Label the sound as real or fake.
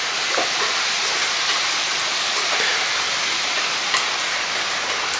real